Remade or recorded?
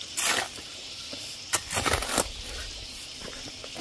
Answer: recorded